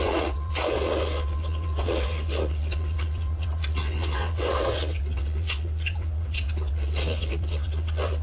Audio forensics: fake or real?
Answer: fake